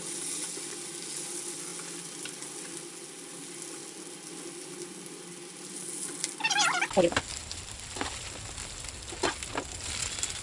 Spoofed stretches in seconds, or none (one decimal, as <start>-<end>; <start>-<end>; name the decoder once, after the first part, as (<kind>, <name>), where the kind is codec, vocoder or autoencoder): none